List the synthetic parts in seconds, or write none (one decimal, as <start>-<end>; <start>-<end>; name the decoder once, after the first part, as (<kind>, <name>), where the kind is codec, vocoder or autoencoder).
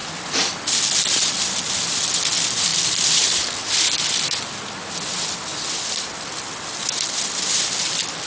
2.7-3.7 (vocoder, BigVGAN v2); 5.5-7.6